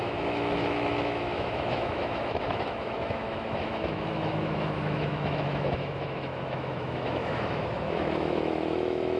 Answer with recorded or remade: remade